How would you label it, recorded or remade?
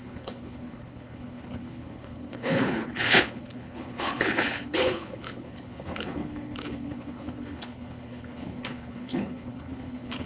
remade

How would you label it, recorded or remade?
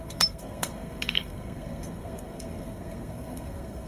remade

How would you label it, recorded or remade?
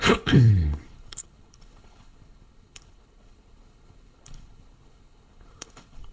remade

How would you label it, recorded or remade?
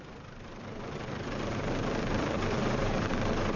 remade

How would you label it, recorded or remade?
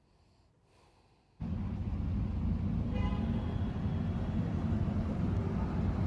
recorded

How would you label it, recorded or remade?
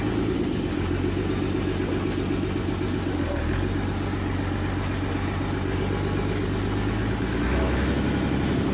recorded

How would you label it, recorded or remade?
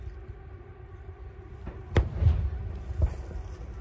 recorded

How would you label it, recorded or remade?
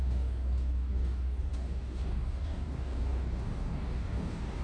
remade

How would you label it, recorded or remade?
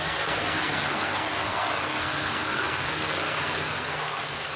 remade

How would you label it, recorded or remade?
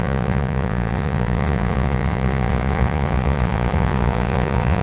remade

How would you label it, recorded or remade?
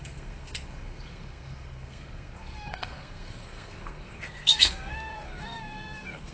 remade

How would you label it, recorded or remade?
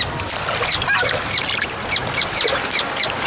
recorded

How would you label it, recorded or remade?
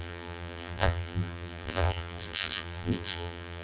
remade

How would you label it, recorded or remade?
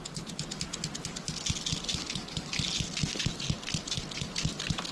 recorded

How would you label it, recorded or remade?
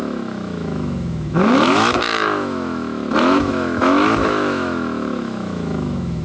remade